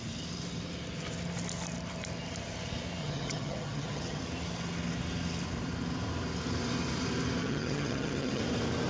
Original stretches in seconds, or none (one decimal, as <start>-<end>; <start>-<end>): 0.0-3.0; 4.2-7.4; 8.4-8.9